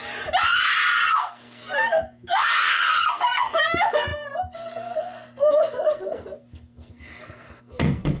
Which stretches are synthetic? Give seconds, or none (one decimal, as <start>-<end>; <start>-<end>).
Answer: 1.1-8.2